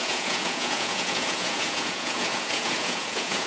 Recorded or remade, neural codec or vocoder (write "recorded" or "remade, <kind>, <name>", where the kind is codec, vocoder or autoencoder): remade, vocoder, Vocos